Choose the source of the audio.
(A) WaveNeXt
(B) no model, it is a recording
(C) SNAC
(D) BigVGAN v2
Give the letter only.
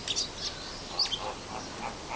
B